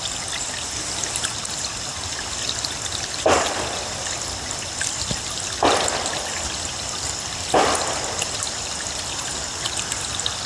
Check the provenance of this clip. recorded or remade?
recorded